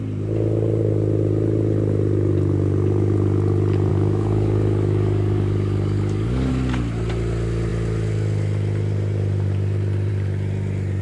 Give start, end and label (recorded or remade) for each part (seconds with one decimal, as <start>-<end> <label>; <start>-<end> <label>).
0.0-3.9 recorded; 3.9-6.5 remade; 6.5-11.0 recorded